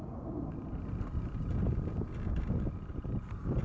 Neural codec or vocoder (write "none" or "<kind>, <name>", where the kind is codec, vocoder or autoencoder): none